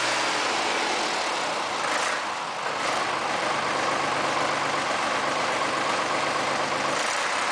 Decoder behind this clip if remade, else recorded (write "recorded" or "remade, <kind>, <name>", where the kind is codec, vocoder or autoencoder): recorded